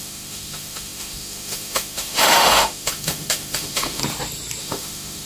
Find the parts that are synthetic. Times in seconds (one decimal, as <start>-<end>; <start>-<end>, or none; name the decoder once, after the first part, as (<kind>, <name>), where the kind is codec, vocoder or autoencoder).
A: 0.0-4.0 (autoencoder, DAC-VAE); 4.6-5.3